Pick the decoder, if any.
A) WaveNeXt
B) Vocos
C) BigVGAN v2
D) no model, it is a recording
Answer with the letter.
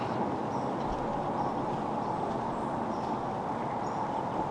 D